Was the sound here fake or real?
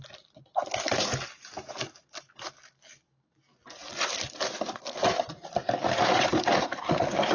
real